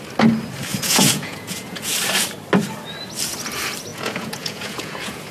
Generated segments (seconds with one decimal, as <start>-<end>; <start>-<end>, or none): 0.7-1.9; 3.9-5.3